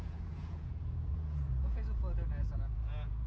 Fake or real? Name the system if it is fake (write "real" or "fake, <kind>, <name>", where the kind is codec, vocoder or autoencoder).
fake, vocoder, Vocos